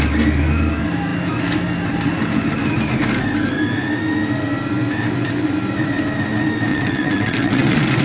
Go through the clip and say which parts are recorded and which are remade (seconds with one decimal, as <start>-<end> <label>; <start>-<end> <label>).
0.0-6.7 recorded; 6.7-8.0 remade